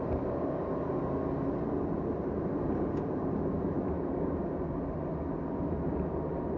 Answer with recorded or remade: recorded